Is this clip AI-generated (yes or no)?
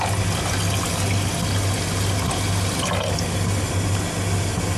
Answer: no